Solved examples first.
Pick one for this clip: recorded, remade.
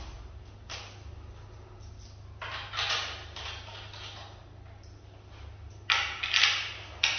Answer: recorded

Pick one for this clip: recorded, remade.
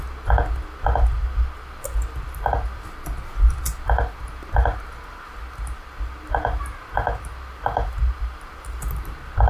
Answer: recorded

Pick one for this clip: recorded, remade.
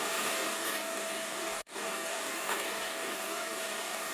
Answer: remade